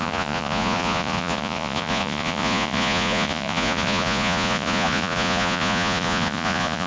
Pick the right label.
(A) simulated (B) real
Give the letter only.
A